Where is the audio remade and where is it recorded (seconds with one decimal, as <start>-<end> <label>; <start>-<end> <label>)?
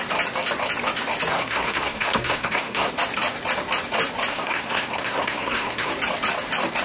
0.0-1.3 recorded; 1.3-2.9 remade; 2.9-4.3 recorded; 4.3-5.9 remade; 5.9-6.8 recorded